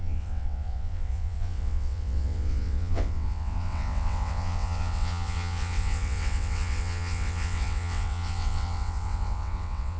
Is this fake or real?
fake